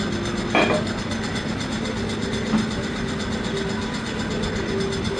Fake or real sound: real